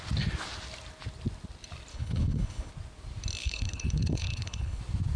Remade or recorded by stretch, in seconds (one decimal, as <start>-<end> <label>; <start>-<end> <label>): 0.0-1.9 recorded; 1.9-2.7 remade; 2.7-3.4 recorded; 3.4-4.8 remade; 4.8-5.2 recorded